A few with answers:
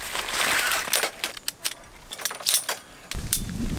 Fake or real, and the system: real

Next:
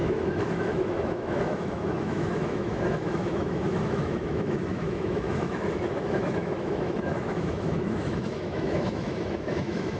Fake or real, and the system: fake, autoencoder, DAC-VAE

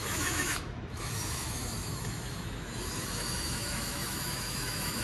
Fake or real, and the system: fake, autoencoder, DAC-VAE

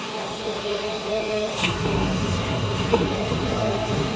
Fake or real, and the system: fake, codec, SNAC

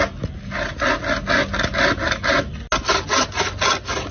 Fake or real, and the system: real